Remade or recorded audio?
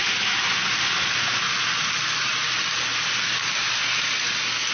recorded